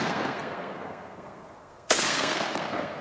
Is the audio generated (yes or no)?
yes